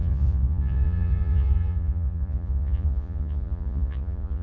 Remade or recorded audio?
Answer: remade